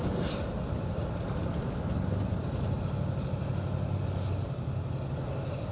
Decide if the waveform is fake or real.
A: real